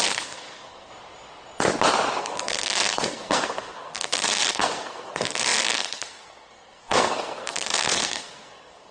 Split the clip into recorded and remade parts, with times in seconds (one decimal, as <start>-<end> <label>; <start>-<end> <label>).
0.0-0.9 remade; 0.9-2.2 recorded; 2.2-8.9 remade